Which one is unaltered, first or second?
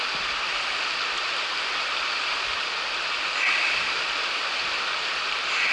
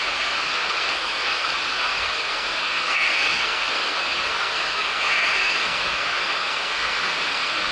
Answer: first